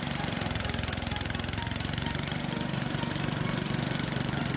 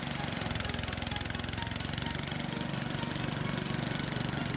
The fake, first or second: first